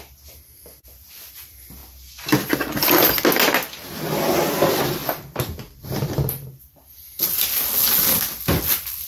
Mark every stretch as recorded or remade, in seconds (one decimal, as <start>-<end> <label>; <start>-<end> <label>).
0.0-5.0 recorded; 5.0-7.6 remade; 7.6-9.1 recorded